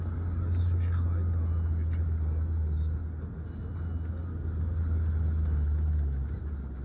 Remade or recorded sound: recorded